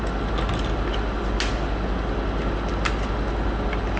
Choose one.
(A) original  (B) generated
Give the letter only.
A